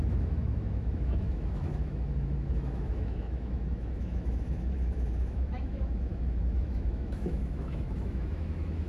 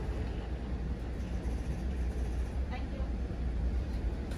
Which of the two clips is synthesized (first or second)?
first